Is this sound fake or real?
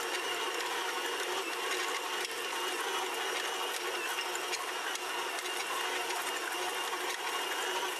real